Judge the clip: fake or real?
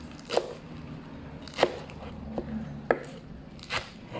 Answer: real